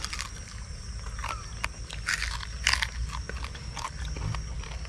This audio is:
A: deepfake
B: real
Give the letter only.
B